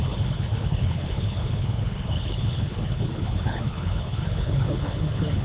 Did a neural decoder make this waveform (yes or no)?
yes